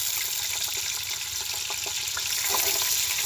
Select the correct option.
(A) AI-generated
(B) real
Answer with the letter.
B